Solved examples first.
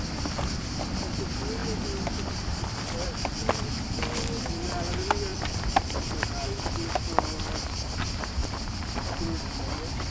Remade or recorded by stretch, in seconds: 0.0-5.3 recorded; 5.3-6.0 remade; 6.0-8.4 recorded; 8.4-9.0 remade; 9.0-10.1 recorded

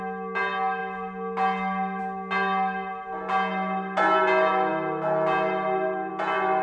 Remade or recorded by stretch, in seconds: 0.0-6.6 recorded

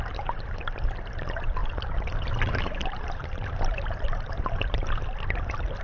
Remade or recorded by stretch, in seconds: 0.0-1.6 recorded; 1.6-4.9 remade; 4.9-5.8 recorded